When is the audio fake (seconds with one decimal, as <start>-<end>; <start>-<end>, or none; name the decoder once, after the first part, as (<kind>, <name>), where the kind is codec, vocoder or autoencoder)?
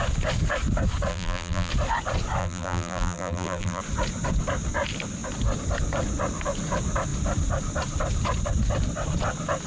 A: 1.1-1.7 (vocoder, BigVGAN v2); 2.4-3.8